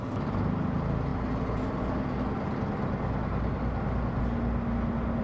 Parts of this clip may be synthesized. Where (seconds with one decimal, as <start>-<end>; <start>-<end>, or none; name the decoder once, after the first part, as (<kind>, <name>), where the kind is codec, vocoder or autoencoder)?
none